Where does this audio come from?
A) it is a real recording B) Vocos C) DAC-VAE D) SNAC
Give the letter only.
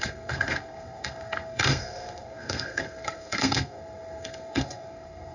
D